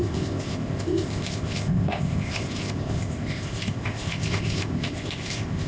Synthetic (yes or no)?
yes